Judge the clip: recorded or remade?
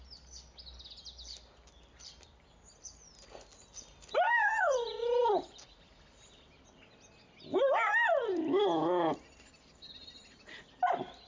recorded